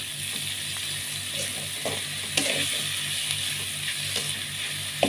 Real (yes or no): yes